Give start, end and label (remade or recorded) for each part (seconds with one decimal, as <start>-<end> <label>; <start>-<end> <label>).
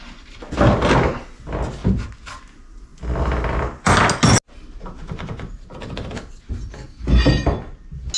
0.0-8.2 recorded